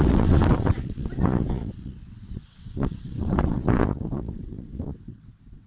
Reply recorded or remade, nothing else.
remade